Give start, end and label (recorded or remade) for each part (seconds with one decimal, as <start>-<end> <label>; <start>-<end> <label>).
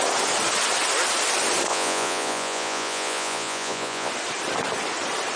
0.0-1.7 recorded; 1.7-4.1 remade; 4.1-5.4 recorded